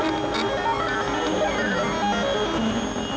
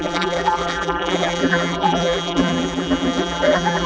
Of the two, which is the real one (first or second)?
first